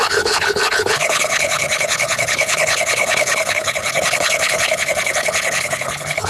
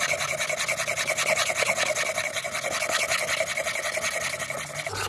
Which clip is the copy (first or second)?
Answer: first